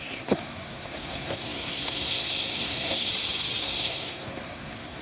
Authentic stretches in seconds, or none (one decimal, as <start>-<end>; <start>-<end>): 3.1-3.6